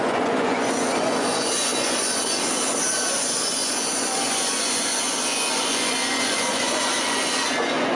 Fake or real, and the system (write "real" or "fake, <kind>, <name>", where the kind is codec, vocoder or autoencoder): fake, vocoder, Vocos